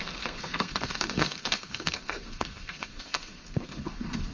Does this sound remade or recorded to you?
remade